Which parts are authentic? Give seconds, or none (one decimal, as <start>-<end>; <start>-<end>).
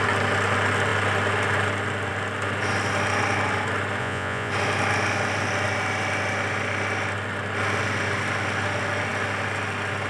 0.0-4.0; 4.5-10.1